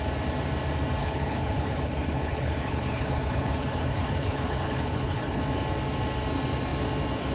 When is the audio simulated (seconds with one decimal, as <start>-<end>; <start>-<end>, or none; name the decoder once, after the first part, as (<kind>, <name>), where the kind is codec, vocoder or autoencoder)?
1.0-5.4 (codec, HILCodec)